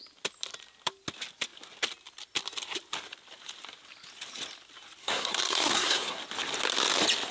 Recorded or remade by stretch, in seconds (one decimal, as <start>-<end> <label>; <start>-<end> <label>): 0.0-5.0 recorded; 5.0-6.2 remade; 6.2-7.3 recorded